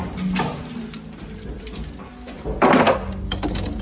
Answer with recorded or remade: recorded